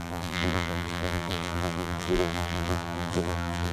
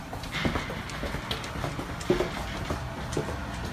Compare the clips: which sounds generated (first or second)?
first